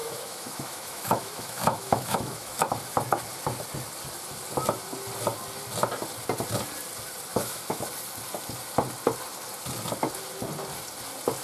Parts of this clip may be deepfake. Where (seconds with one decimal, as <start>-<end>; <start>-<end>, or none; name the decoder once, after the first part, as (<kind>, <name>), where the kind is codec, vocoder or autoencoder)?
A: 0.0-2.7 (autoencoder, DAC-VAE); 7.3-7.8